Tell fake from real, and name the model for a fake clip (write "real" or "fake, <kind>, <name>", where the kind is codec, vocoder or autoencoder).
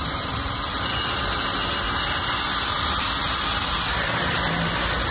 real